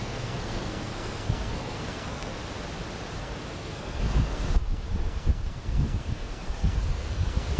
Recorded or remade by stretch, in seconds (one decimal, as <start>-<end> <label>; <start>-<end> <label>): 0.0-2.4 remade; 2.4-3.2 recorded; 3.2-7.6 remade